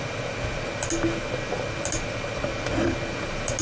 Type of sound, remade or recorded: recorded